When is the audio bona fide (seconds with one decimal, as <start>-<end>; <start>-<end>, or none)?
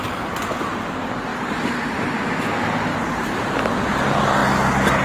0.0-1.3; 2.1-2.9; 3.5-5.0